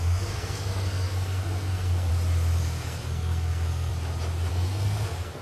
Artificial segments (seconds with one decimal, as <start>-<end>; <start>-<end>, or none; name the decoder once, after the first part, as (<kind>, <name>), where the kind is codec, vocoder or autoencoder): 0.0-2.1 (codec, SNAC); 2.6-3.9; 4.5-5.4